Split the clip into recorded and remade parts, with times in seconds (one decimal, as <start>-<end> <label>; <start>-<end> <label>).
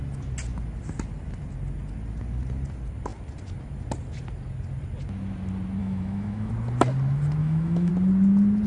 0.0-5.8 recorded; 5.8-6.5 remade; 6.5-7.4 recorded; 7.4-7.9 remade; 7.9-8.7 recorded